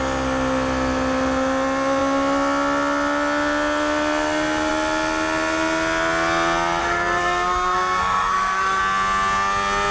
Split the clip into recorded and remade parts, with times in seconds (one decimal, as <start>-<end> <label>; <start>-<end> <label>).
0.0-6.8 recorded; 6.8-8.8 remade; 8.8-9.9 recorded